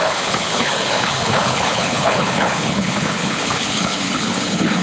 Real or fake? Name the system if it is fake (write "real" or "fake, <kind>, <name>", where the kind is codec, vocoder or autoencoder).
fake, codec, HILCodec